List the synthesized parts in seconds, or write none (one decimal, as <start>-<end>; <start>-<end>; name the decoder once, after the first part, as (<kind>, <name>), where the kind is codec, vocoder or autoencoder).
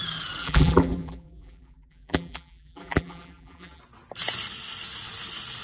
0.4-3.8 (vocoder, BigVGAN v2)